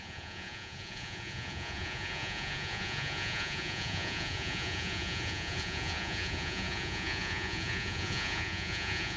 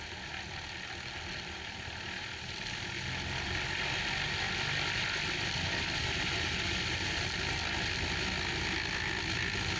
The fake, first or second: first